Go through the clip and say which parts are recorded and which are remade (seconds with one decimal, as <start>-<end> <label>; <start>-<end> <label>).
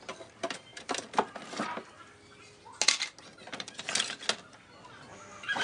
0.0-5.6 recorded